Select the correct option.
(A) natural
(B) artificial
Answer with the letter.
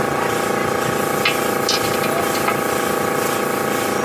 A